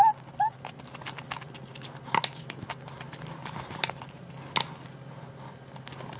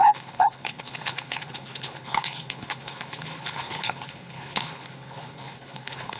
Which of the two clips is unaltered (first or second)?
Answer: first